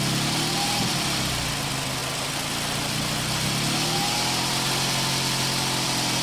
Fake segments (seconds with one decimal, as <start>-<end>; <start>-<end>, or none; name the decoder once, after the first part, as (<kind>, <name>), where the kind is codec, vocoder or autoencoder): none